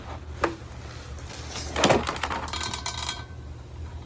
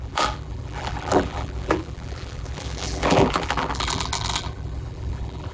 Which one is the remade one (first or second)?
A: second